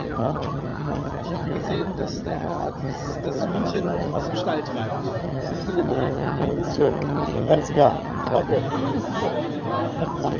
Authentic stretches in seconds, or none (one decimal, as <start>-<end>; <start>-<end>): 4.3-5.2; 8.5-10.0